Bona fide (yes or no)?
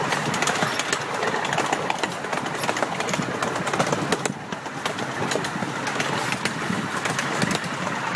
yes